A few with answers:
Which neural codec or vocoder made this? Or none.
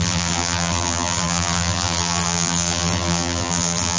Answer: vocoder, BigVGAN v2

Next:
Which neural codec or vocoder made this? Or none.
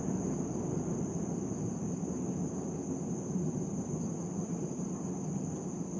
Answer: none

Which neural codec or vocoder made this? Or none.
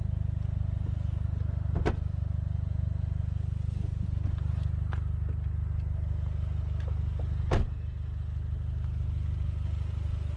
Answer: none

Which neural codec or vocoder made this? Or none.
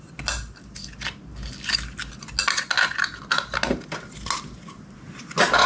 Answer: none